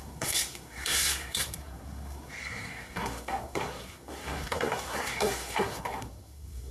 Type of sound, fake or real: fake